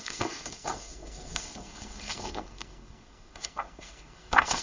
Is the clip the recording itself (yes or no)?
no